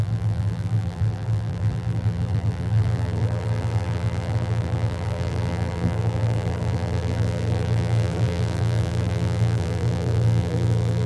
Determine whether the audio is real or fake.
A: fake